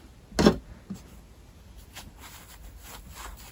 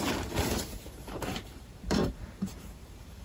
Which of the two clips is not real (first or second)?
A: second